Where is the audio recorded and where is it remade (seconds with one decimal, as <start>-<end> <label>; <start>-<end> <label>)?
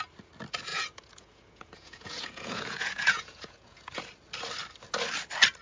0.0-0.7 recorded; 0.7-4.1 remade; 4.1-5.6 recorded